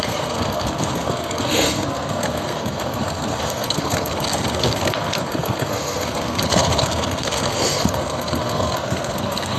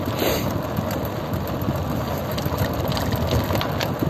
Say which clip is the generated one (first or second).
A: first